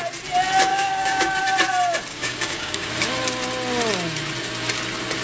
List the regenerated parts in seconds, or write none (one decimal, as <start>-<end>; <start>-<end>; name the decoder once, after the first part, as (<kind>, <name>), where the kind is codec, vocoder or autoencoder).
0.7-1.4 (codec, DAC); 2.1-2.9